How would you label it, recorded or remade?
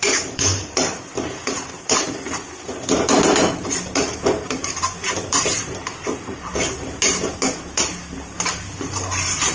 remade